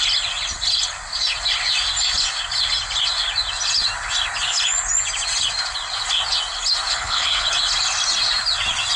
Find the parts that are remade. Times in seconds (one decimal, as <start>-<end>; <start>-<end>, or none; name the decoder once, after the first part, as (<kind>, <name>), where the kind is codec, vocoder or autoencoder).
6.9-7.5 (codec, HILCodec)